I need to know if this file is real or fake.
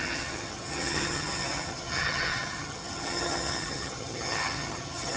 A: fake